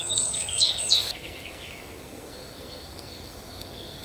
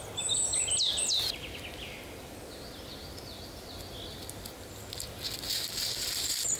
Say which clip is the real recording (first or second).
second